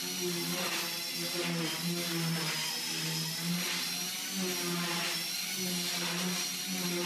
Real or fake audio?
real